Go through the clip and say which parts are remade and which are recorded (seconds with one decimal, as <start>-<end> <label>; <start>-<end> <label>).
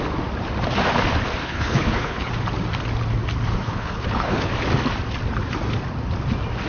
0.0-1.4 recorded; 1.4-2.3 remade; 2.3-3.6 recorded; 3.6-4.5 remade; 4.5-6.7 recorded